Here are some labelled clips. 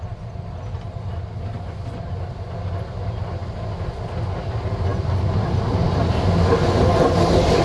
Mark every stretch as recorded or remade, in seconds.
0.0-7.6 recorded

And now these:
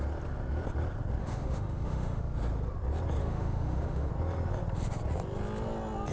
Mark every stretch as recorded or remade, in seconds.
0.0-1.2 recorded; 1.2-2.2 remade; 2.2-3.2 recorded; 3.2-4.1 remade; 4.1-6.1 recorded

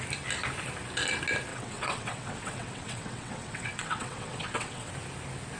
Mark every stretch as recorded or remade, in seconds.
0.0-1.5 recorded; 1.5-4.9 remade; 4.9-5.6 recorded

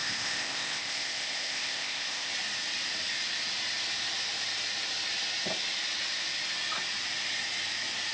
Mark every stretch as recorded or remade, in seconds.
0.0-2.3 remade; 2.3-8.1 recorded

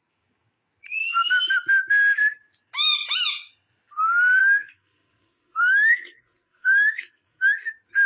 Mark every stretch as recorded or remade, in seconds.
0.0-4.4 recorded; 4.4-7.4 remade; 7.4-8.1 recorded